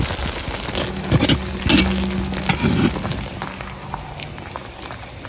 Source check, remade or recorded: recorded